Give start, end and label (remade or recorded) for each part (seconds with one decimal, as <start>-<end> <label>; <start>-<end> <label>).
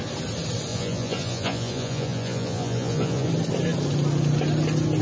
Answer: 0.0-0.7 recorded; 0.7-3.3 remade; 3.3-5.0 recorded